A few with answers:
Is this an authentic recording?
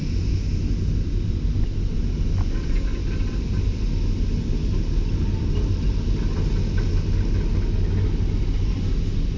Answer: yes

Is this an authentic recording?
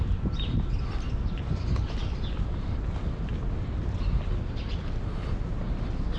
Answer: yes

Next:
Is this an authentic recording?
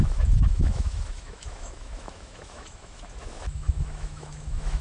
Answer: no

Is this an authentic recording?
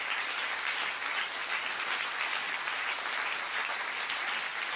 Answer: yes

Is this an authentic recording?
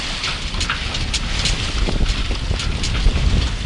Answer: yes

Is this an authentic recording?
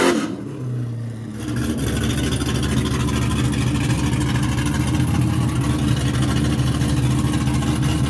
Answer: yes